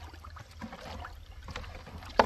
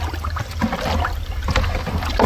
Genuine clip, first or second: second